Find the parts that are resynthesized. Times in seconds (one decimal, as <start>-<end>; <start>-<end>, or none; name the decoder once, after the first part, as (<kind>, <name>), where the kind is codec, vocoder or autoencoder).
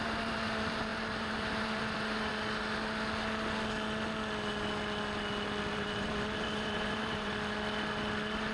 0.0-2.3 (vocoder, BigVGAN v2); 5.7-7.3